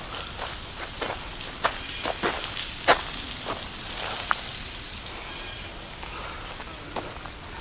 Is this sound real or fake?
real